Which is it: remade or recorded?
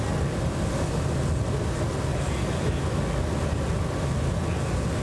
recorded